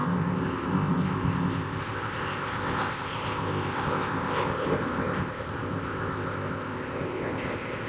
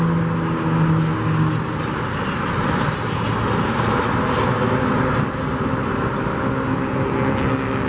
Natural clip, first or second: second